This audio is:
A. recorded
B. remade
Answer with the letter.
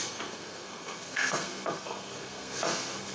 B